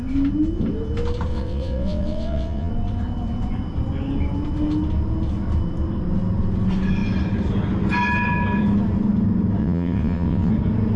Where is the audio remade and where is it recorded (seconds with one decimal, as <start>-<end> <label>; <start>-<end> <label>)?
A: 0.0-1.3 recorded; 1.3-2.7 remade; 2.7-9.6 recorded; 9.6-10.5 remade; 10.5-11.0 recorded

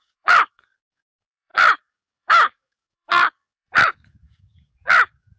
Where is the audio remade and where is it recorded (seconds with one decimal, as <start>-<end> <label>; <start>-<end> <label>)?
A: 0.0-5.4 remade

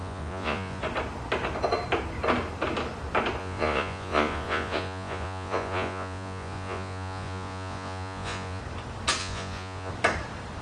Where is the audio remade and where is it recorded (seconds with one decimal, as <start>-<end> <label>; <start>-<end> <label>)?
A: 0.0-0.8 remade; 0.8-3.4 recorded; 3.4-8.6 remade; 8.6-9.2 recorded; 9.2-9.9 remade; 9.9-10.6 recorded

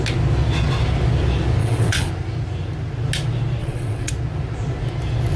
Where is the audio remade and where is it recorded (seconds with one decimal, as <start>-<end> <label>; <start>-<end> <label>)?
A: 0.0-1.6 recorded; 1.6-2.1 remade; 2.1-3.6 recorded; 3.6-4.1 remade; 4.1-5.4 recorded

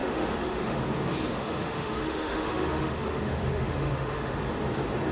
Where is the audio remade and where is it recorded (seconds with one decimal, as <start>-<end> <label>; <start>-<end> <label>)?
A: 0.0-0.8 remade; 0.8-1.3 recorded; 1.3-4.4 remade; 4.4-5.1 recorded